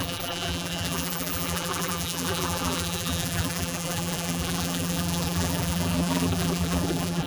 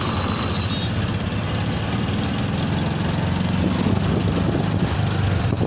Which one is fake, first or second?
first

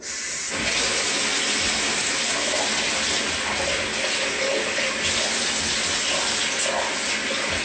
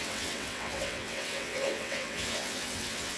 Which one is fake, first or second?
second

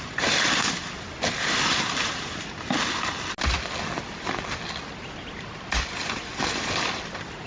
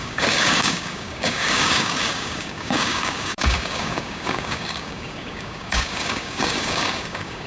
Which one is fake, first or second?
second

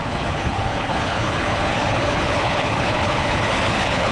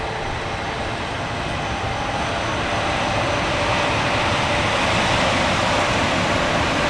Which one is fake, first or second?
first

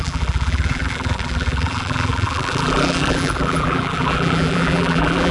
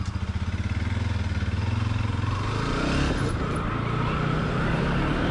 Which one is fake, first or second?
first